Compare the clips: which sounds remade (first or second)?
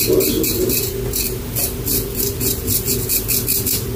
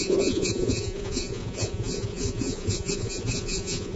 second